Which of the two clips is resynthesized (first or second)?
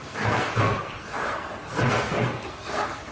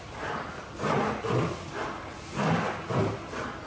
first